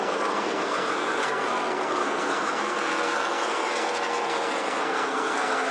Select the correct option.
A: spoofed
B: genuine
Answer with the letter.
A